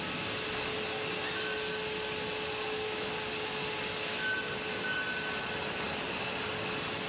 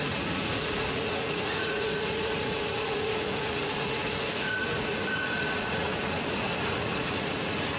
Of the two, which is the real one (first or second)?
first